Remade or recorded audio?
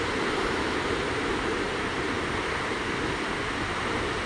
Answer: recorded